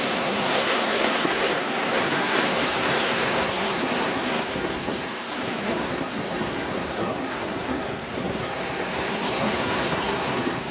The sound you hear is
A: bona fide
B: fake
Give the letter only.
B